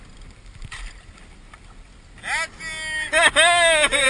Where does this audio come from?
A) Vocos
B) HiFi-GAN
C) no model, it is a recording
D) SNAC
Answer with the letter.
C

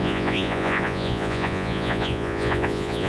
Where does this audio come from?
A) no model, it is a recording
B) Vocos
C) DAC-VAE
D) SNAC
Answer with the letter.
B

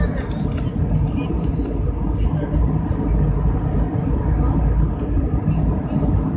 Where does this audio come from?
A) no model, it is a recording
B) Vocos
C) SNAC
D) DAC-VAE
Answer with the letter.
A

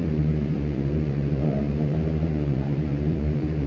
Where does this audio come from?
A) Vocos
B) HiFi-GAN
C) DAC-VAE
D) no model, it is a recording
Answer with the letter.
A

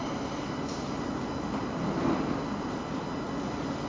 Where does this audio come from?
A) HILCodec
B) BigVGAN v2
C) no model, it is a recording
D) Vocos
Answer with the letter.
C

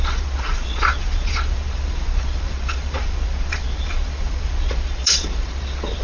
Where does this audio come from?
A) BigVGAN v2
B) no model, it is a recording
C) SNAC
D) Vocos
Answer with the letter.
D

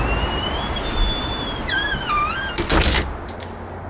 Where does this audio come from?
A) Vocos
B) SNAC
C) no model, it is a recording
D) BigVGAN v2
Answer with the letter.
C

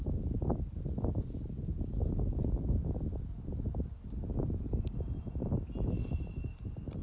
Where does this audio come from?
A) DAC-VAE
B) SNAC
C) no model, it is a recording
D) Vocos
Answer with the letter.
C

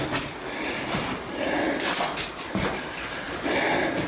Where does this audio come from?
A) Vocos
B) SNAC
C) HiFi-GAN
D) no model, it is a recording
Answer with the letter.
D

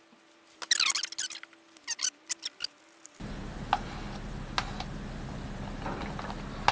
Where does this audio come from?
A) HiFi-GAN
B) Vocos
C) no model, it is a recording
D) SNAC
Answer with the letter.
C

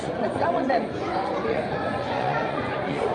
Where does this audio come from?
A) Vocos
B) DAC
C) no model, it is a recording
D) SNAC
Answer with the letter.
A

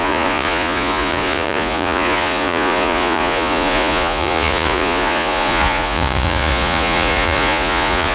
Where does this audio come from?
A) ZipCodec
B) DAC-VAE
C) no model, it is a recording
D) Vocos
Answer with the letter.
D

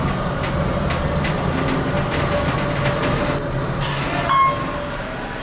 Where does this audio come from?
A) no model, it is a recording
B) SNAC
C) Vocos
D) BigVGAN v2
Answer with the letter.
A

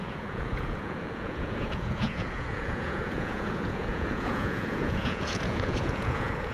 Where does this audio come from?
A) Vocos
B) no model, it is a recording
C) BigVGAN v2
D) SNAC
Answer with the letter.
A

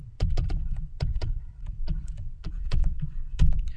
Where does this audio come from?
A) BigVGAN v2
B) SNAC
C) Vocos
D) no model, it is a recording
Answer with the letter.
C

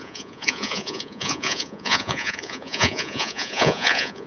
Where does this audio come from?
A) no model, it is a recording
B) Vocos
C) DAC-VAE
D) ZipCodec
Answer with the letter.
B